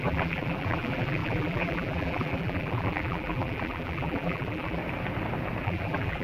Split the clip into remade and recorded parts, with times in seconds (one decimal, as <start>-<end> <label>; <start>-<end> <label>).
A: 0.0-4.8 remade; 4.8-5.6 recorded; 5.6-6.2 remade